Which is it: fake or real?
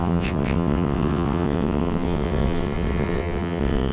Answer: fake